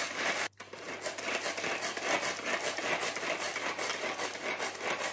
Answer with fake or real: real